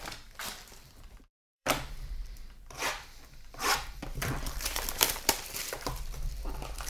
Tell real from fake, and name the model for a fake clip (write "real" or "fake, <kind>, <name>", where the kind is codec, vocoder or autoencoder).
fake, vocoder, BigVGAN v2